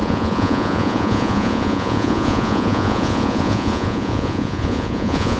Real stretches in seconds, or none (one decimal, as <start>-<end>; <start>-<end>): none